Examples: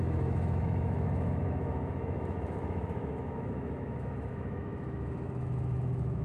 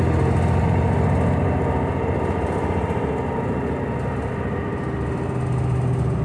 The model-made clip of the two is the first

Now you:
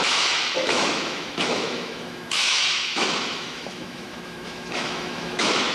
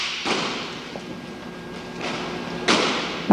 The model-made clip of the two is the first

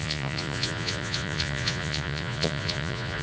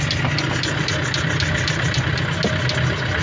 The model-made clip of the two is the first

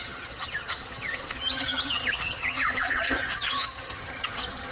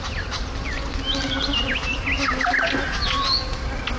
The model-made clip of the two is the first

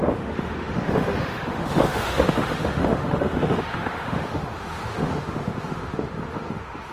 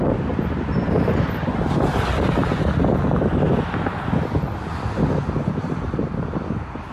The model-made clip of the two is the first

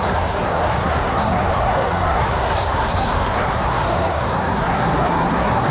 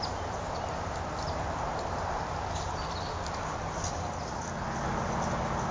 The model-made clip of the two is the first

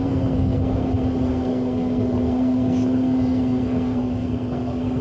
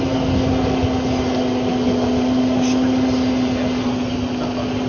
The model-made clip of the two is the first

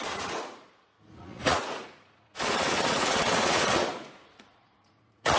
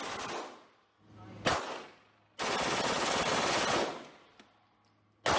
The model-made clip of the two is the first